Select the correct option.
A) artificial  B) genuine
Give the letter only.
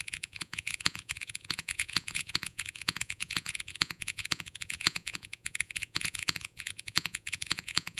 A